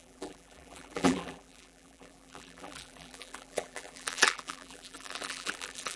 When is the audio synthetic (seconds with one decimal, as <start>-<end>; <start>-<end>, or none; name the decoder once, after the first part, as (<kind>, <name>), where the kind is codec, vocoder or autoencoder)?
0.0-6.0 (vocoder, BigVGAN v2)